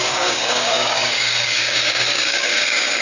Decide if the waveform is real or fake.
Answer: fake